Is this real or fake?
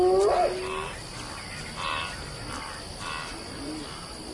real